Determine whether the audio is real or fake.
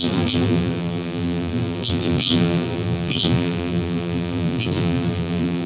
fake